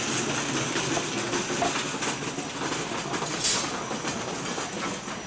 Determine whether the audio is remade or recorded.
recorded